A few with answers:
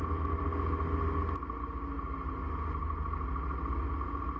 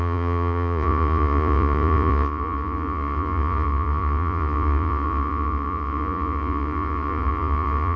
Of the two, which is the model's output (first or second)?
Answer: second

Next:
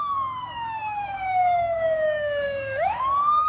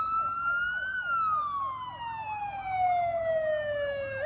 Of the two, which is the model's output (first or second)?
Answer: first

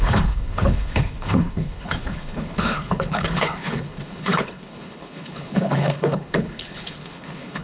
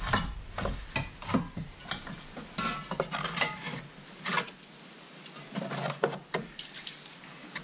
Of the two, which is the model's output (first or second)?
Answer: first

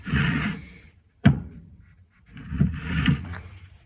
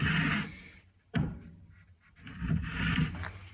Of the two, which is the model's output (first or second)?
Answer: first